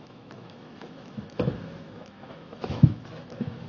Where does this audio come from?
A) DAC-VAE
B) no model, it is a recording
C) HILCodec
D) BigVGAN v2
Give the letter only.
A